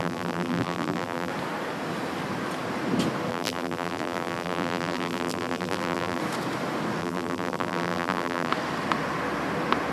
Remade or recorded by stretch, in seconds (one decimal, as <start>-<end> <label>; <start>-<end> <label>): 0.0-1.3 remade; 1.3-3.3 recorded; 3.3-6.2 remade; 6.2-7.0 recorded; 7.0-8.5 remade; 8.5-9.9 recorded